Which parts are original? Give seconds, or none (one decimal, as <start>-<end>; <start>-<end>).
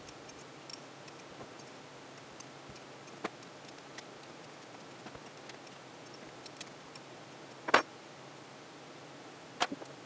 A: 0.0-10.1